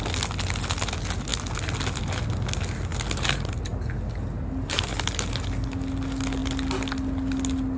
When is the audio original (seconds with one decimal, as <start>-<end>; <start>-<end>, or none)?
0.0-7.8